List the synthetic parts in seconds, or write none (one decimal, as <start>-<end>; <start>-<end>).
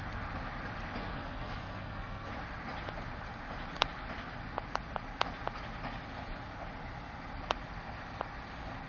1.0-2.3